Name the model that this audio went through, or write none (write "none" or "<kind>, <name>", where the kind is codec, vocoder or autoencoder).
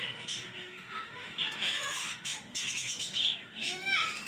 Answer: autoencoder, DAC-VAE